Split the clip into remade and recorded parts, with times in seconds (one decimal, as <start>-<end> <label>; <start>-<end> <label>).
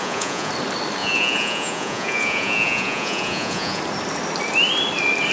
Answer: 0.0-0.5 remade; 0.5-1.0 recorded; 1.0-3.8 remade; 3.8-5.3 recorded